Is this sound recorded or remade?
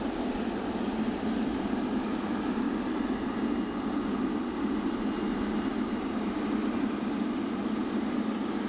recorded